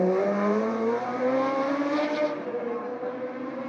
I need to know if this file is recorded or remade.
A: remade